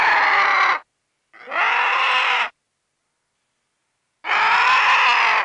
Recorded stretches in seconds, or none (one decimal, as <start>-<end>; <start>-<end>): 0.0-1.9; 2.6-3.8; 4.4-5.4